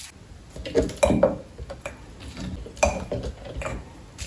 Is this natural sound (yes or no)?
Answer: yes